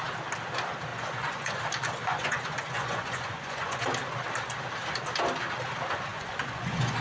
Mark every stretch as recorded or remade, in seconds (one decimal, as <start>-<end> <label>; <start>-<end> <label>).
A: 0.0-0.9 recorded; 0.9-1.6 remade; 1.6-2.0 recorded; 2.0-3.9 remade; 3.9-6.1 recorded; 6.1-7.0 remade